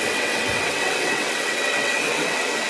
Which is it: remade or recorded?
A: remade